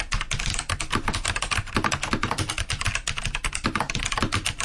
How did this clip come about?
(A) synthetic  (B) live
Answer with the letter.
B